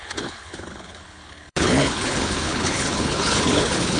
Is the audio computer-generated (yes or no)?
yes